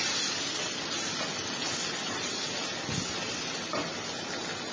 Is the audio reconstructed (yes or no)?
no